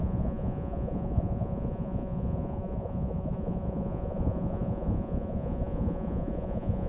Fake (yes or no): yes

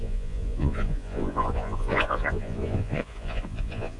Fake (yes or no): yes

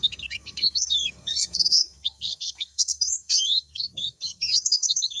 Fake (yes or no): yes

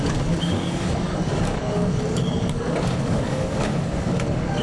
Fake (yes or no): yes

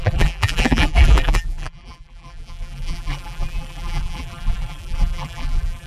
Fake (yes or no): yes